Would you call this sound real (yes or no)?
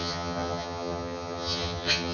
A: no